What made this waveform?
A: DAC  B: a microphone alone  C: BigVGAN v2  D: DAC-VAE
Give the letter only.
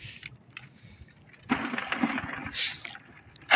B